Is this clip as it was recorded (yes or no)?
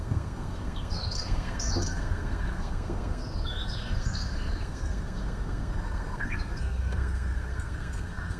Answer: no